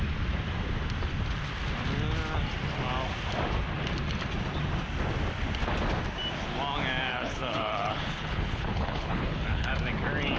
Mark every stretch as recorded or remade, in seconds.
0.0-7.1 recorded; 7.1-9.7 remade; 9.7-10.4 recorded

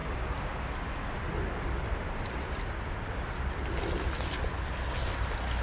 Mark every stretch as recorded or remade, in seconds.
0.0-5.6 recorded

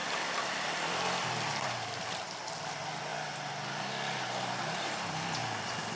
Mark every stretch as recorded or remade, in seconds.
0.0-3.1 remade; 3.1-4.6 recorded; 4.6-5.4 remade; 5.4-6.0 recorded